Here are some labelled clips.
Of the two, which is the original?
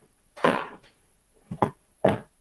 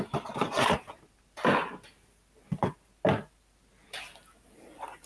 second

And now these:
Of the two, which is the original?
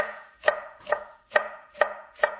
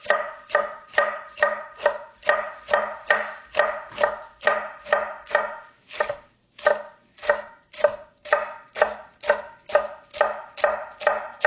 second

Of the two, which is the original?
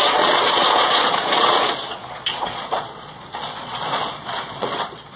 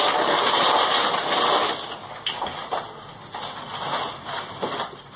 second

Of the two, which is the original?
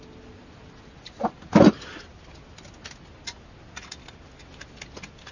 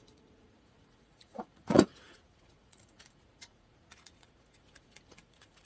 first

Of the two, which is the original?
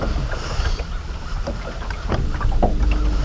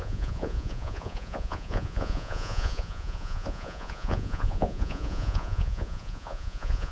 first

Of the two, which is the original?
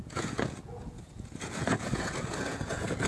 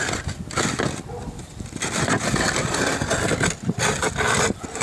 second